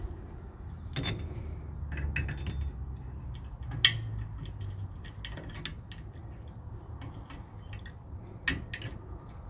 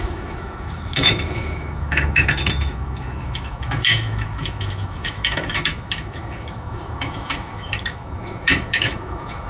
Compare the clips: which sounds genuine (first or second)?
first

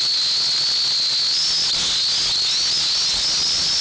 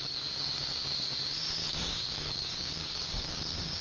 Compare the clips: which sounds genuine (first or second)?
first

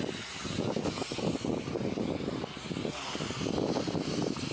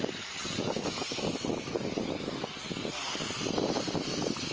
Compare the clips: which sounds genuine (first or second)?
first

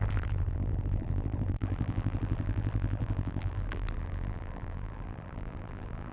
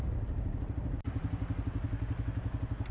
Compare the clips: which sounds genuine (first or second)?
second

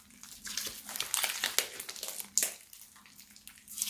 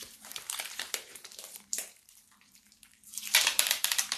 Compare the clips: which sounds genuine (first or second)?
first